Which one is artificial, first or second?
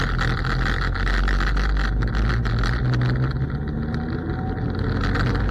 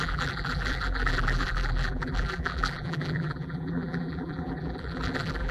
second